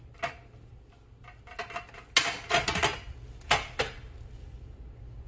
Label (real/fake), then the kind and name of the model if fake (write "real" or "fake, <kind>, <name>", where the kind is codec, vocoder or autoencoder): real